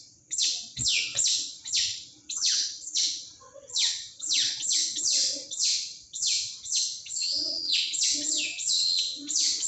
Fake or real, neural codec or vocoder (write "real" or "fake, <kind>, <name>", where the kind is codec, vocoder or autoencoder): fake, vocoder, WaveNeXt